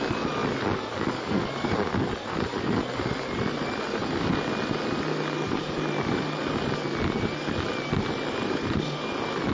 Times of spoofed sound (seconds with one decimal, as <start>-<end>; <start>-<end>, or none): none